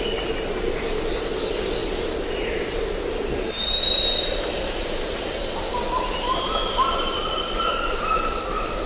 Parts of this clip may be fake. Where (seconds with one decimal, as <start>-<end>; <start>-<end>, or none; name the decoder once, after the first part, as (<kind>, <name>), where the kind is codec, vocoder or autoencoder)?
none